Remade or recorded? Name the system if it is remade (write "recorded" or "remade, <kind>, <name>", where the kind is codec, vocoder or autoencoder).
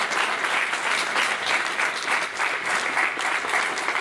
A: recorded